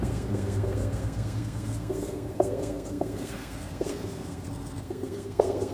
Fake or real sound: fake